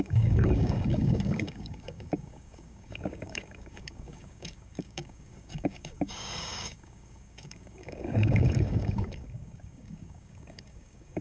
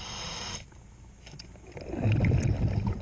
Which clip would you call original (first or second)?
second